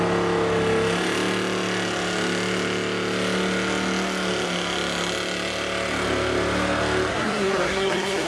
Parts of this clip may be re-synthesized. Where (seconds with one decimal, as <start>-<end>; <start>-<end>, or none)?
7.1-8.3